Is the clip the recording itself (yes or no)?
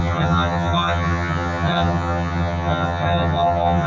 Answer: no